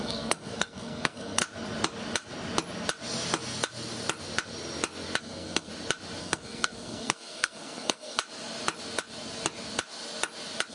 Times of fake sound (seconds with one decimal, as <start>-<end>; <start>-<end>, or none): 0.0-1.4; 5.2-5.7; 6.2-8.2